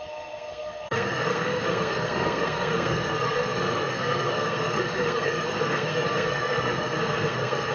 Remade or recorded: remade